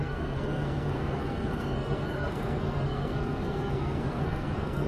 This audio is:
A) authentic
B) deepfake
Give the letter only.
B